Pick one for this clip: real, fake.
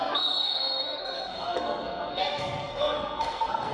fake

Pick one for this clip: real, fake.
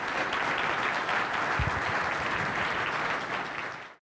real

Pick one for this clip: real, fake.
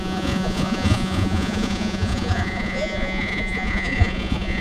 fake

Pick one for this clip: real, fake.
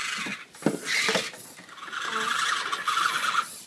real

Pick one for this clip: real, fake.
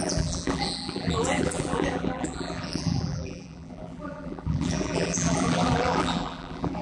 fake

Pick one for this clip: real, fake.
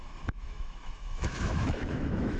fake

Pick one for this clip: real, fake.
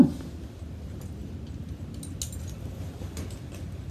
real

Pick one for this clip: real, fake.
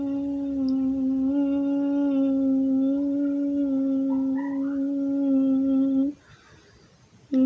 real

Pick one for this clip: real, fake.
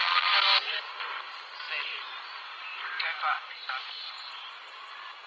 real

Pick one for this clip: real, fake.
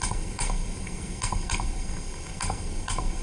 fake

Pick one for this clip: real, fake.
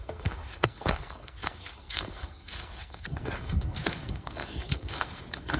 fake